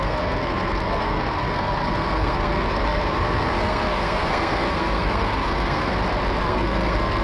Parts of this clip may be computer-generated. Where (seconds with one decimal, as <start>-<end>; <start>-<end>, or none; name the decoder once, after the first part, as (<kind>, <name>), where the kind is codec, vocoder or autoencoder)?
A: 0.0-5.9 (codec, SNAC); 6.4-7.2